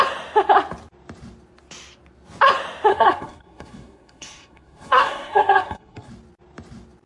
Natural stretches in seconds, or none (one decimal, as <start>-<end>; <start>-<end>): 0.0-2.9; 6.1-7.1